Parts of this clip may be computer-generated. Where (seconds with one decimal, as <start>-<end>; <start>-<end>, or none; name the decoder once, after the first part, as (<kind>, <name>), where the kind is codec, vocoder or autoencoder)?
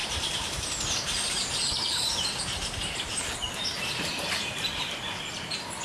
0.0-3.2 (vocoder, BigVGAN v2); 3.6-4.8